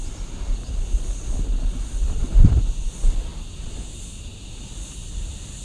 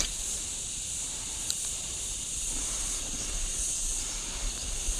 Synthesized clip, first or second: second